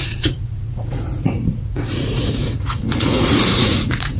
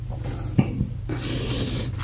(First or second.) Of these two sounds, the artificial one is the first